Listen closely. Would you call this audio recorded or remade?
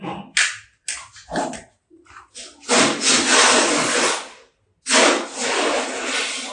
recorded